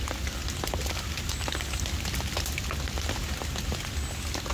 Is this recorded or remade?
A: recorded